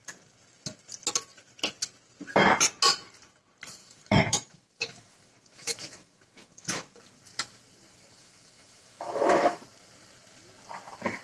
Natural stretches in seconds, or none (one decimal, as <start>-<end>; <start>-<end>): 0.0-3.8; 7.0-8.2; 9.6-11.2